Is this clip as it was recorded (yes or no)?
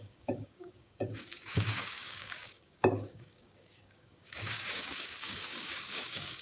no